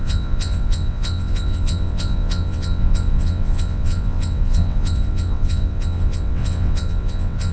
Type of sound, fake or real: fake